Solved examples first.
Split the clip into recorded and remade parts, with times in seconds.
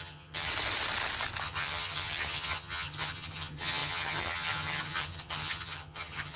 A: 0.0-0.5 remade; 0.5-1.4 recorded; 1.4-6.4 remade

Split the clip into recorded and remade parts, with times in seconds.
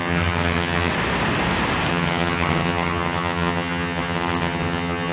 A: 0.0-0.9 remade; 0.9-1.9 recorded; 1.9-5.1 remade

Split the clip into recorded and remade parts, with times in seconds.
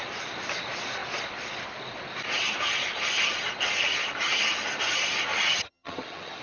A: 0.0-5.3 recorded; 5.3-6.4 remade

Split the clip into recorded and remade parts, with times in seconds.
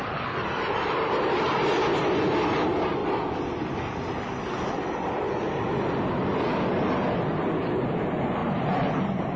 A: 0.0-9.4 recorded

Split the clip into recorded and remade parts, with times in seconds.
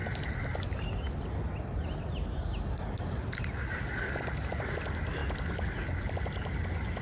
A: 0.0-7.0 recorded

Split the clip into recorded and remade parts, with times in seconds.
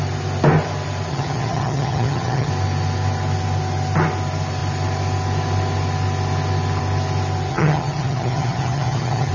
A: 0.0-1.1 recorded; 1.1-2.5 remade; 2.5-7.5 recorded; 7.5-9.3 remade